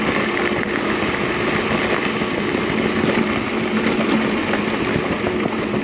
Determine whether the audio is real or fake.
real